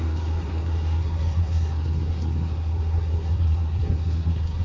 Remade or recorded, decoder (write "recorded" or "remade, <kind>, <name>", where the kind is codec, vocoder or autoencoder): remade, codec, SNAC